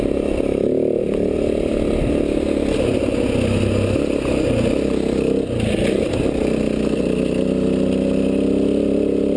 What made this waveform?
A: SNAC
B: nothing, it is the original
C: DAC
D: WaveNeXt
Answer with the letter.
B